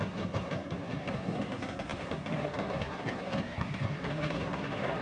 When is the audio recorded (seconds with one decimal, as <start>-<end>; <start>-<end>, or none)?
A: none